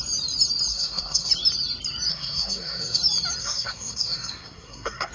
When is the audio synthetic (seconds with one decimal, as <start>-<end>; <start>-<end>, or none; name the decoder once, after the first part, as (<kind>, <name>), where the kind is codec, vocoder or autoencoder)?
0.7-1.3 (codec, SNAC); 2.1-3.0; 3.4-5.1